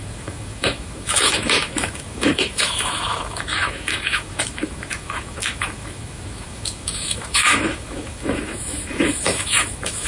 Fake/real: fake